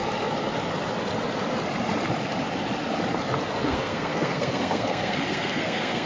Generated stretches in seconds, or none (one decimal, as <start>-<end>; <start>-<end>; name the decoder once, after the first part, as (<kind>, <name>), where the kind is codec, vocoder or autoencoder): 3.6-6.1 (codec, SNAC)